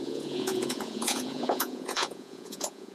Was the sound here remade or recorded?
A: remade